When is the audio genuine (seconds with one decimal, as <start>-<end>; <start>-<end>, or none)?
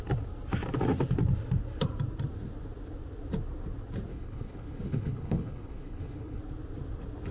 0.0-4.1; 6.4-7.3